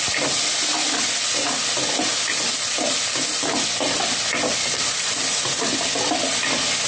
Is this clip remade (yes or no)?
no